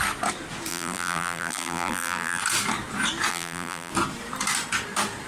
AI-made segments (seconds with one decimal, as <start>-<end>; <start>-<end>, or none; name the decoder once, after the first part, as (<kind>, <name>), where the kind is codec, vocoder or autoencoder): 0.7-2.4 (vocoder, BigVGAN v2); 3.3-3.9